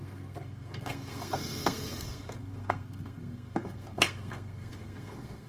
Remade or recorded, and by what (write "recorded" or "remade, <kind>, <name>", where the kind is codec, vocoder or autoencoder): remade, codec, SNAC